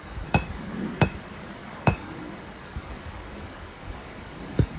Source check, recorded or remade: remade